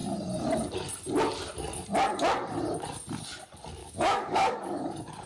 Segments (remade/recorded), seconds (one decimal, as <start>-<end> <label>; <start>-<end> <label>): 0.0-3.8 recorded; 3.8-5.3 remade